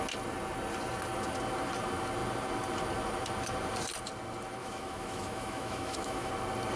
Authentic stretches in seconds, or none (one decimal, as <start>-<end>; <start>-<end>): 0.0-4.6; 6.3-6.8